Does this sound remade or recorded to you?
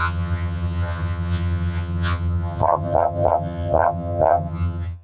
remade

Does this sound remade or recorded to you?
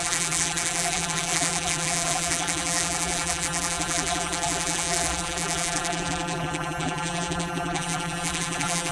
remade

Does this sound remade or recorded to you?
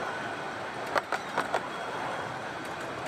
recorded